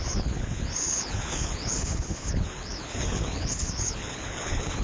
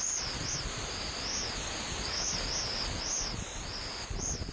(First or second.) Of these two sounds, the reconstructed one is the first